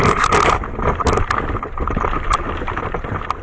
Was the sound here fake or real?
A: real